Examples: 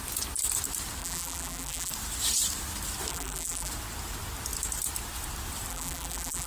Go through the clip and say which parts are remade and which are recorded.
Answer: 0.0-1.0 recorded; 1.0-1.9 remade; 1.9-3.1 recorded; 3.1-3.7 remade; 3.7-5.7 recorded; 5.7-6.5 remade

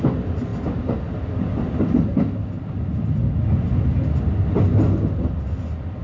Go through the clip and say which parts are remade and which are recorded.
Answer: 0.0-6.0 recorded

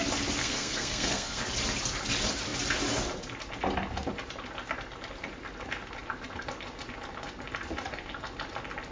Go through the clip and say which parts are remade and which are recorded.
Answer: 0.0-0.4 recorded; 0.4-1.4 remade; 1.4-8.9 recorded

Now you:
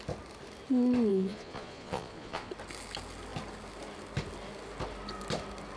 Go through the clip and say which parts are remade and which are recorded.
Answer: 0.0-1.1 recorded; 1.1-2.5 remade; 2.5-5.8 recorded

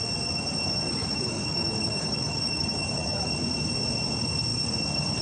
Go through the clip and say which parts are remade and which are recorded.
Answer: 0.0-1.0 recorded; 1.0-3.3 remade; 3.3-5.2 recorded